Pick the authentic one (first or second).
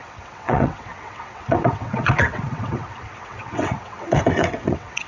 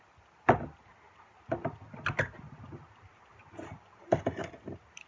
second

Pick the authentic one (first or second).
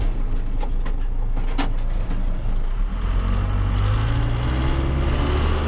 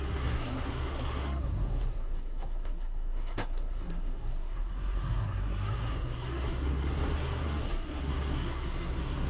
first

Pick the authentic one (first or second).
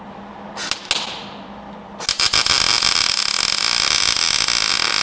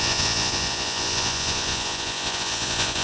first